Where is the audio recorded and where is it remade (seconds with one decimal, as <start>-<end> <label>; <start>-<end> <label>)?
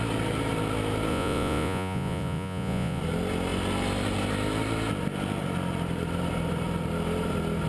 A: 0.0-1.1 recorded; 1.1-3.0 remade; 3.0-7.7 recorded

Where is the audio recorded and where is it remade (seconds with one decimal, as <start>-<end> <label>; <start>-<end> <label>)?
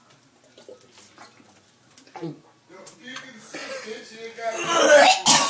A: 0.0-5.5 recorded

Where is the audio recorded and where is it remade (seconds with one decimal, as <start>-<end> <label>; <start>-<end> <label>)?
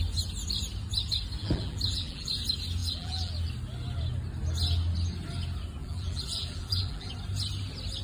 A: 0.0-1.4 recorded; 1.4-2.3 remade; 2.3-2.8 recorded; 2.8-3.3 remade; 3.3-5.8 recorded; 5.8-7.1 remade; 7.1-8.0 recorded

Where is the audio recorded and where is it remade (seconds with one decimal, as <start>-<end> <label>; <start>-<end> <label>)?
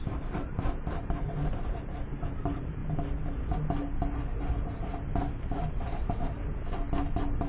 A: 0.0-2.8 remade; 2.8-7.5 recorded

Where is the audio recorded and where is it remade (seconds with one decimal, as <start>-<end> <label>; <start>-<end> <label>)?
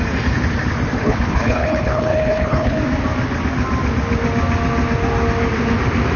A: 0.0-1.0 recorded; 1.0-2.8 remade; 2.8-6.2 recorded